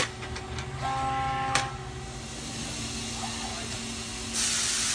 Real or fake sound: real